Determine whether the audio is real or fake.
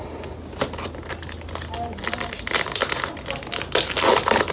real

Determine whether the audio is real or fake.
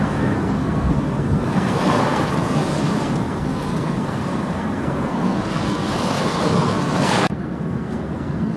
fake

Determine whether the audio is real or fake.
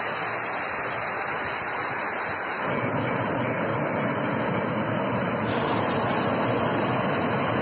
real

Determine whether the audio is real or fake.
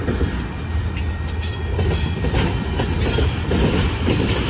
real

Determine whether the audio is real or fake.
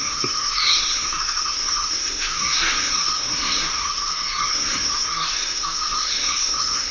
fake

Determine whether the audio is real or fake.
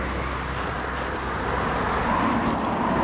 real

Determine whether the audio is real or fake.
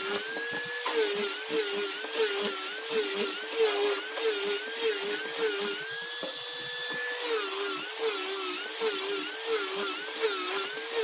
real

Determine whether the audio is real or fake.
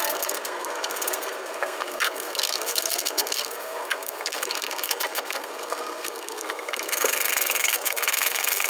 fake